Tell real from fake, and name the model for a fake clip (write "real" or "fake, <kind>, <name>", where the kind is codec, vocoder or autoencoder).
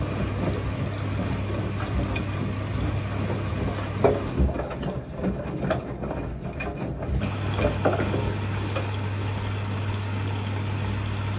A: real